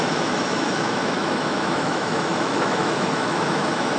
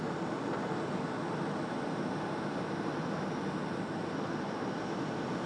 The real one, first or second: second